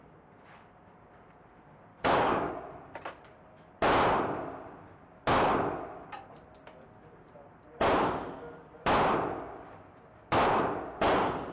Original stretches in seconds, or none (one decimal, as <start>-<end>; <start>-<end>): 0.0-1.9; 2.5-11.5